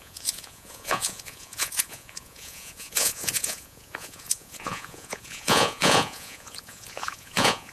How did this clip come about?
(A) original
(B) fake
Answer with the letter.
B